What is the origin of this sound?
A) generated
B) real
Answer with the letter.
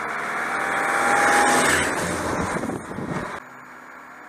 B